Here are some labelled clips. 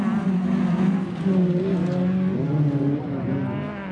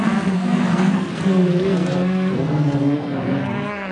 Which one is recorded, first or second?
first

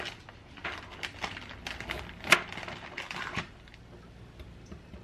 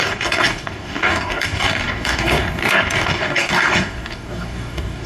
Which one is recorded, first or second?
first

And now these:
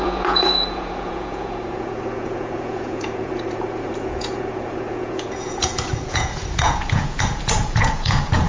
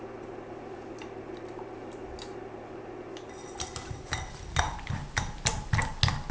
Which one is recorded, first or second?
second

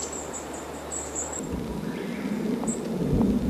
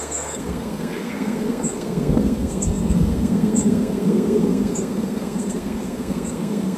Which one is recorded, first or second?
first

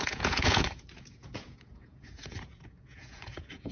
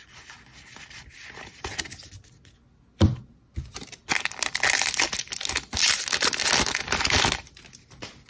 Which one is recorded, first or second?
second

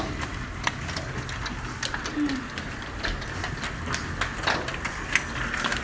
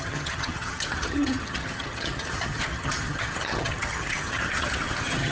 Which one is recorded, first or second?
first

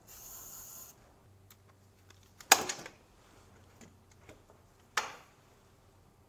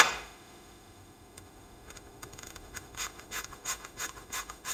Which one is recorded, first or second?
first